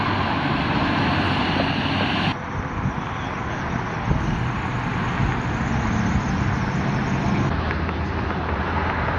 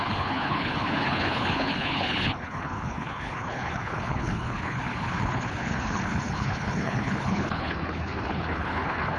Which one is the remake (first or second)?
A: second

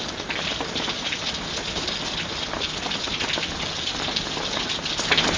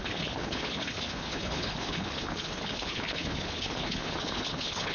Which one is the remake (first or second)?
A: second